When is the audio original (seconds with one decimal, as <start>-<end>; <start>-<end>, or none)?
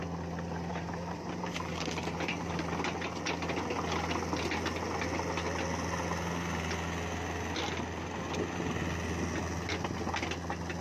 0.0-0.7; 2.0-10.8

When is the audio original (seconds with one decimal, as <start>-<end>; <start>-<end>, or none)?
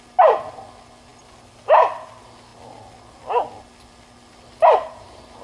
0.0-5.4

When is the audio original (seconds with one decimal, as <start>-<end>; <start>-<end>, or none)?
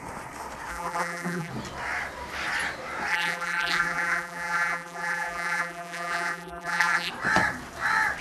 0.0-0.7; 1.5-3.1; 7.1-8.2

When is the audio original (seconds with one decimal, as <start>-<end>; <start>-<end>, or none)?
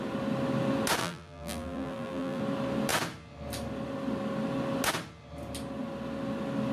0.0-1.0; 2.4-6.7